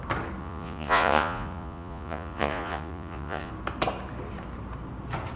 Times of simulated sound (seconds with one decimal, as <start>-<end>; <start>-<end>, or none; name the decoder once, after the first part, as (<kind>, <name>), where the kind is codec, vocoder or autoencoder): 0.4-3.5 (vocoder, Vocos)